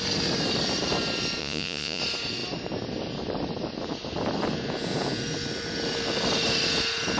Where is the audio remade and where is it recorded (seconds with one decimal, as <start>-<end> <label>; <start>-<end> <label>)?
0.0-1.4 recorded; 1.4-2.0 remade; 2.0-7.2 recorded